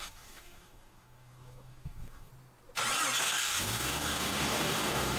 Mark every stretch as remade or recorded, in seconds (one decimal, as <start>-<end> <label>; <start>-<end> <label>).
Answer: 0.0-2.3 remade; 2.3-3.2 recorded; 3.2-5.2 remade

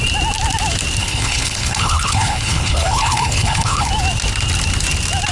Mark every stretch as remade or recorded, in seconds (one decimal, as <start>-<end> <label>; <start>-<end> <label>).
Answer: 0.0-1.0 recorded; 1.0-3.9 remade; 3.9-5.3 recorded

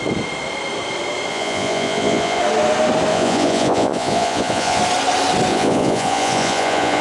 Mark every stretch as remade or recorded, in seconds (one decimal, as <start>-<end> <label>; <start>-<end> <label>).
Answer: 0.0-1.3 recorded; 1.3-2.4 remade; 2.4-3.1 recorded; 3.1-4.8 remade; 4.8-5.5 recorded; 5.5-7.0 remade

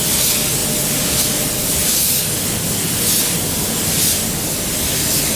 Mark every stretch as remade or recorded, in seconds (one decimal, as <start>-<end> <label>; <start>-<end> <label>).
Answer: 0.0-5.4 recorded

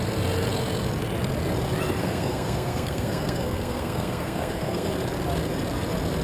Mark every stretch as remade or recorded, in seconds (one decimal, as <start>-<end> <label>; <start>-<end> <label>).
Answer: 0.0-2.0 recorded; 2.0-4.9 remade; 4.9-6.2 recorded

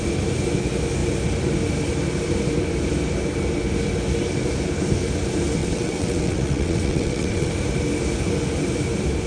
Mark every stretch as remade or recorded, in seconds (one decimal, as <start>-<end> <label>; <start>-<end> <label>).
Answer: 0.0-5.6 recorded; 5.6-7.5 remade; 7.5-9.3 recorded

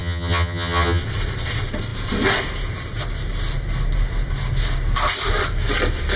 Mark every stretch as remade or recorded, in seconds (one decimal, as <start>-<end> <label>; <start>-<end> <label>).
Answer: 0.0-1.0 remade; 1.0-6.2 recorded

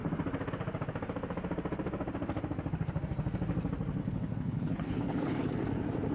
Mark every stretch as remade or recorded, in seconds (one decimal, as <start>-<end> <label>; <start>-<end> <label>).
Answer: 0.0-4.0 recorded; 4.0-5.4 remade; 5.4-6.1 recorded